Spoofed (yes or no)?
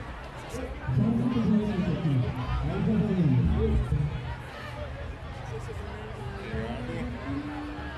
no